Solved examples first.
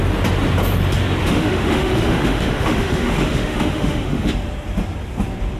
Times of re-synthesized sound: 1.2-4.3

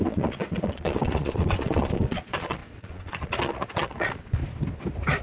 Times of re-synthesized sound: 0.0-4.4

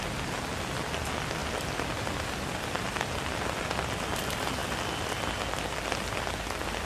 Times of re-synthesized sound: none

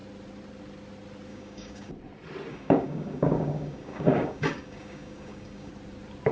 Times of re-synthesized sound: 1.3-1.9; 2.5-5.7